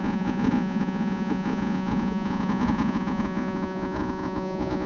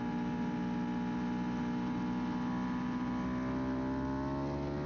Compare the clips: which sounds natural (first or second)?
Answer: second